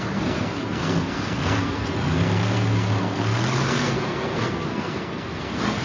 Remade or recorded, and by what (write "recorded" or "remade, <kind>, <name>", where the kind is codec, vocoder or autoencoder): remade, codec, SNAC